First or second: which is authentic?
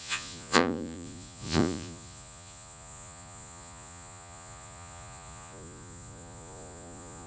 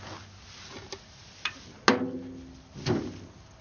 second